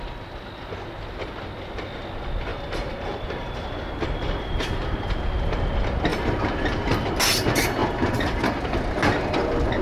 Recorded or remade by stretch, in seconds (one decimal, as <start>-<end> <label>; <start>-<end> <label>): 0.0-2.5 recorded; 2.5-4.9 remade; 4.9-6.1 recorded; 6.1-7.1 remade; 7.1-7.8 recorded; 7.8-8.4 remade; 8.4-9.8 recorded